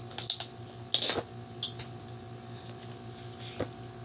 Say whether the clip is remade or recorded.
recorded